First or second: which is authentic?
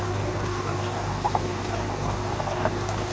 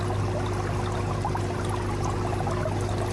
second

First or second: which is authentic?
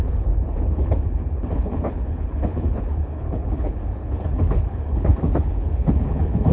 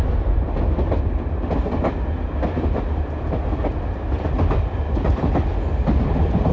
second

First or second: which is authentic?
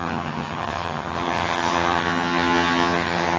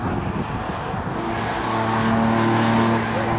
second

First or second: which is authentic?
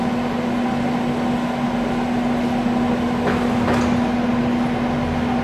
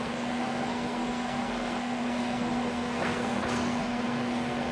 first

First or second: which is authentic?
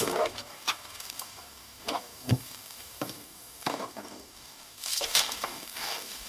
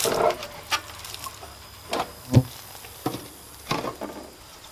second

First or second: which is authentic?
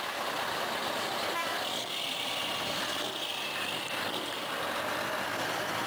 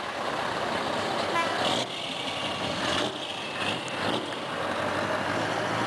second